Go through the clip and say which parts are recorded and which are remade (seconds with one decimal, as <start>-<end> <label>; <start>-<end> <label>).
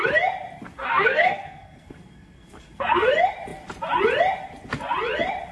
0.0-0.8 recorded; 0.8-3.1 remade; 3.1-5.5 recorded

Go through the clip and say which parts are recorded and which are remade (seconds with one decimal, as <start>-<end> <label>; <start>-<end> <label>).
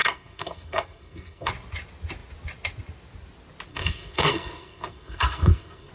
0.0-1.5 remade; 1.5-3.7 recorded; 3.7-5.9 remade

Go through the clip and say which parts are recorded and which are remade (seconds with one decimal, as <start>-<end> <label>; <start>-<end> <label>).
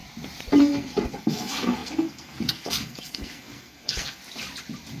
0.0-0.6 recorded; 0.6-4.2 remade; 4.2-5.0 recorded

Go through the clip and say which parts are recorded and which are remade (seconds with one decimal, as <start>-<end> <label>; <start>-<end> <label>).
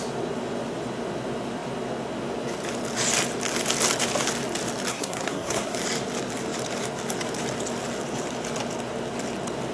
0.0-4.9 recorded; 4.9-5.8 remade; 5.8-9.7 recorded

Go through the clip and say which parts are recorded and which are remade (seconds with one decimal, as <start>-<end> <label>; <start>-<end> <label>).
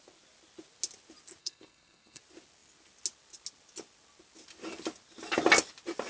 0.0-1.4 recorded; 1.4-2.2 remade; 2.2-6.1 recorded